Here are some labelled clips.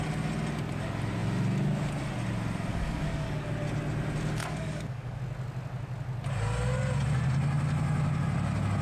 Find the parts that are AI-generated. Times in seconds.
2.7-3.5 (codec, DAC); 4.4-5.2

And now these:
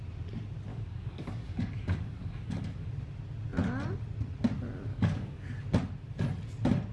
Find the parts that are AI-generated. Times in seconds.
0.7-2.9 (codec, DAC); 4.9-5.5

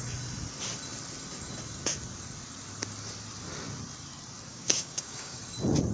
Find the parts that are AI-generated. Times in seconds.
4.5-5.4 (codec, DAC)

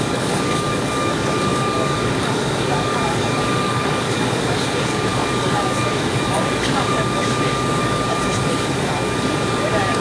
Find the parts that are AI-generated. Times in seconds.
0.0-10.0 (codec, DAC)

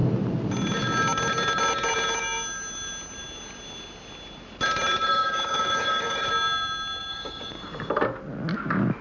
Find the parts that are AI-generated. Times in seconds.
5.1-6.2 (codec, DAC); 7.1-7.9